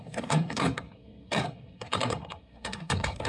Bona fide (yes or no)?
no